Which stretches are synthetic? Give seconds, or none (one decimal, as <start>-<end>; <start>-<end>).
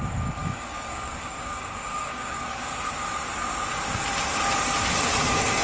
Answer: 0.4-2.7